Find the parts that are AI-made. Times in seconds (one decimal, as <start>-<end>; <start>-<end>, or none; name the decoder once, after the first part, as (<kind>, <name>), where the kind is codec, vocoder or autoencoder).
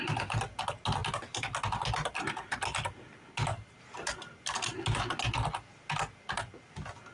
none